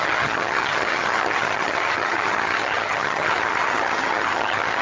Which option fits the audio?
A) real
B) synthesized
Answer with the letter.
B